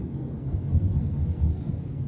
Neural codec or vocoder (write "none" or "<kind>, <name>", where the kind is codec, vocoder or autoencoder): codec, SNAC